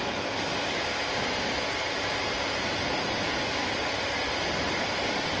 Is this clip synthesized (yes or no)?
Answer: no